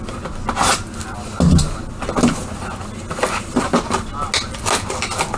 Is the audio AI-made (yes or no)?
no